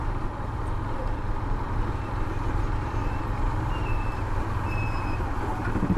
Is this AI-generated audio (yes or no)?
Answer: yes